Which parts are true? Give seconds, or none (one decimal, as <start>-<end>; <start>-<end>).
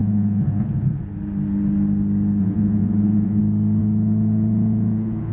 1.0-2.4; 3.4-3.8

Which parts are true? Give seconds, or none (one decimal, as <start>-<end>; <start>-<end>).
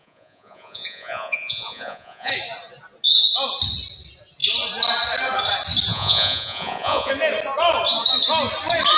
2.3-5.9; 7.1-9.0